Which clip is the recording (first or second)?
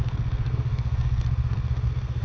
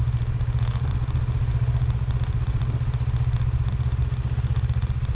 second